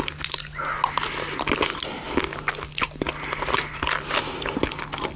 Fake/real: real